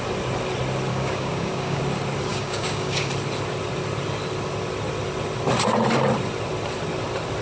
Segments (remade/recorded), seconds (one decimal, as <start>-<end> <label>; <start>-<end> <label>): 0.0-0.9 recorded; 0.9-1.8 remade; 1.8-2.3 recorded; 2.3-3.1 remade; 3.1-7.4 recorded